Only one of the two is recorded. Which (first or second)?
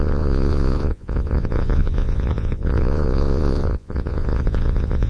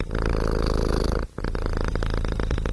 second